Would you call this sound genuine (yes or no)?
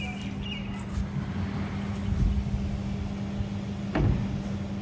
yes